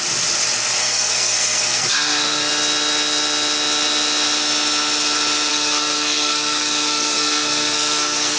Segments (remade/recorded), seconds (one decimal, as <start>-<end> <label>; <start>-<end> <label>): 0.0-0.8 recorded; 0.8-2.5 remade; 2.5-5.5 recorded; 5.5-8.4 remade

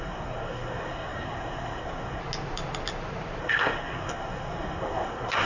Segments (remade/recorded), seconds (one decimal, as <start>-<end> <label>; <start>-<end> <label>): 0.0-2.2 remade; 2.2-3.4 recorded; 3.4-5.5 remade

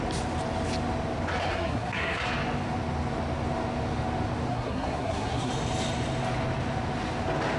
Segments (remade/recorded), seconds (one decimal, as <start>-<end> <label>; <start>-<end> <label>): 0.0-1.5 recorded; 1.5-2.3 remade; 2.3-4.5 recorded; 4.5-5.5 remade; 5.5-7.6 recorded